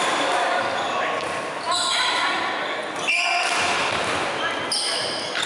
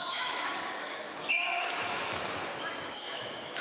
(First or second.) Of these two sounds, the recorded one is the first